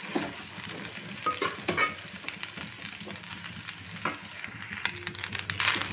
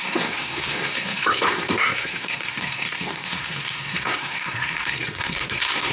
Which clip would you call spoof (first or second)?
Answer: second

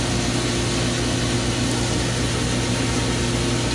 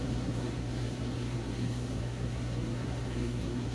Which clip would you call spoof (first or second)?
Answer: second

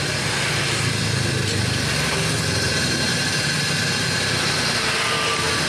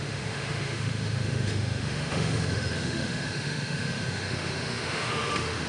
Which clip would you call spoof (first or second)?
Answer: second